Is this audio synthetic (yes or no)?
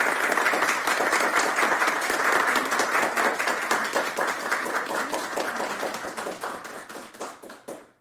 no